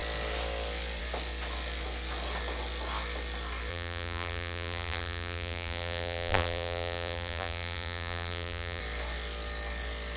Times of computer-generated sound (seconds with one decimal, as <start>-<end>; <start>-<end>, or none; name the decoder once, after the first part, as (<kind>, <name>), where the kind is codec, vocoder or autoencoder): 3.7-8.8 (vocoder, BigVGAN v2)